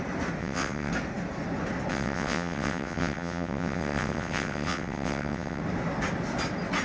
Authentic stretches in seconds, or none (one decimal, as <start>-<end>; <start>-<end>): 0.0-0.4; 0.9-1.9; 5.6-6.8